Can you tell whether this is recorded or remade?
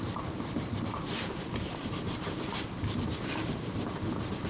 remade